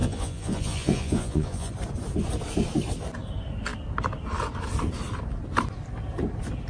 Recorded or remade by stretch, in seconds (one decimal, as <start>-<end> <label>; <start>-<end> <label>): 0.0-1.7 remade; 1.7-6.7 recorded

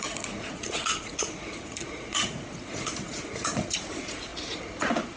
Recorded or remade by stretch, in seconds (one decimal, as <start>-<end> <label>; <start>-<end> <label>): 0.0-4.3 remade; 4.3-5.2 recorded

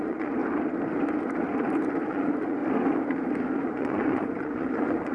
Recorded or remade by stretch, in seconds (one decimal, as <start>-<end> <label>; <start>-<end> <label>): 0.0-0.4 remade; 0.4-2.1 recorded; 2.1-2.6 remade; 2.6-3.6 recorded; 3.6-5.1 remade

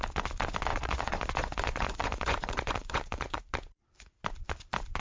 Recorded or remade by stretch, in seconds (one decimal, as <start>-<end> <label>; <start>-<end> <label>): 0.0-0.7 recorded; 0.7-3.4 remade; 3.4-5.0 recorded

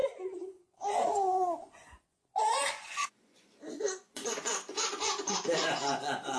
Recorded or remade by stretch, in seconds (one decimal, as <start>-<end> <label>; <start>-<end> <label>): 0.0-6.4 remade

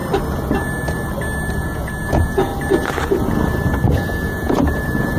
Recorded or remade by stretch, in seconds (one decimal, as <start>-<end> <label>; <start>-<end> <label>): 0.0-1.5 recorded; 1.5-2.5 remade; 2.5-3.9 recorded; 3.9-5.2 remade